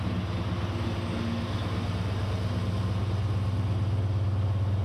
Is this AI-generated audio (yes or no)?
no